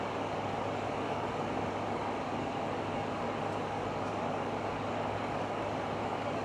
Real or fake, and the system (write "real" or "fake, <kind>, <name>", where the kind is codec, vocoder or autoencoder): fake, codec, DAC